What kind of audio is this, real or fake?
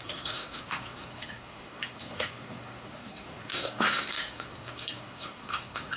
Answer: fake